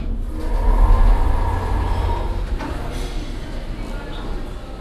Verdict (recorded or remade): recorded